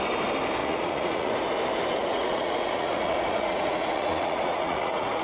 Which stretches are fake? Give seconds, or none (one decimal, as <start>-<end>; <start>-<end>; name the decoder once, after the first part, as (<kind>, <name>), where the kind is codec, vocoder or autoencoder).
0.6-1.3 (vocoder, Vocos); 2.0-5.2